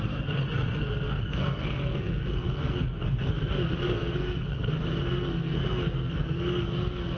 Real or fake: fake